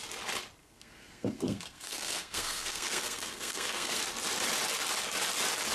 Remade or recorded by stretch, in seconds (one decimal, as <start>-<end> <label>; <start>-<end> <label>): 0.0-0.6 recorded; 0.6-4.0 remade; 4.0-5.7 recorded